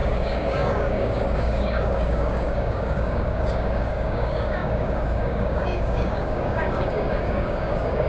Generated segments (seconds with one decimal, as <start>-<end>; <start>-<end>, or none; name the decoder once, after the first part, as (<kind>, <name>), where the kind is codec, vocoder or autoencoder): 0.0-8.1 (codec, DAC)